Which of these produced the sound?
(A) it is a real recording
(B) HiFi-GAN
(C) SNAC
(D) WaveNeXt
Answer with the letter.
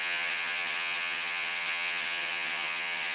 B